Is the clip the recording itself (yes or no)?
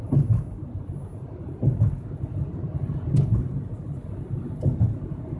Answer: yes